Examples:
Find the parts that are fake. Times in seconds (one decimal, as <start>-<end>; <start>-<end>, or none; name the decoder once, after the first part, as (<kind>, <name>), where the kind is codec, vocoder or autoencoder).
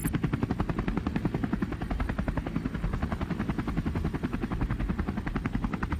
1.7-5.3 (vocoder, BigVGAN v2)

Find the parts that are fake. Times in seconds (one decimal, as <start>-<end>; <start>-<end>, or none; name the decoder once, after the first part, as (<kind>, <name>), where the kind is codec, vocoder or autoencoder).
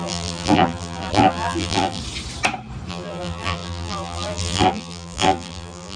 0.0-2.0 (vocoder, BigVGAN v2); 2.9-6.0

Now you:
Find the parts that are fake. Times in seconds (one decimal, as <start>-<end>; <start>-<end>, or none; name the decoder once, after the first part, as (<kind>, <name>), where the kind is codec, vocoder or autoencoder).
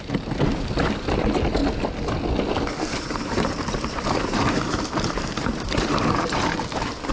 0.0-1.6 (vocoder, BigVGAN v2); 2.8-7.1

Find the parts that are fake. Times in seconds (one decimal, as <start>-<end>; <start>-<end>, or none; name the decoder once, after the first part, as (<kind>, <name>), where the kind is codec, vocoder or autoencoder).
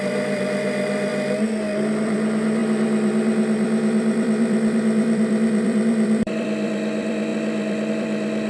0.0-1.1 (vocoder, BigVGAN v2); 2.0-8.5